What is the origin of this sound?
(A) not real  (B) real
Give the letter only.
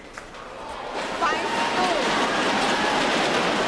B